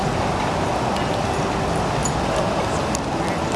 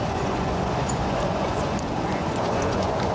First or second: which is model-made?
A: second